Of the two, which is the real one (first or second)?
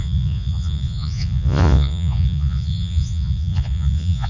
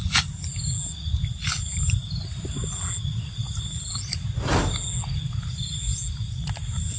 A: second